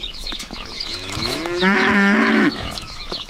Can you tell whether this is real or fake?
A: fake